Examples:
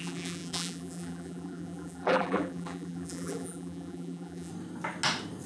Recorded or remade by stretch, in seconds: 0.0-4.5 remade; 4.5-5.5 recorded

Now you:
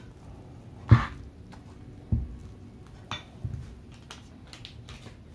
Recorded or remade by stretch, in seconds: 0.0-5.3 recorded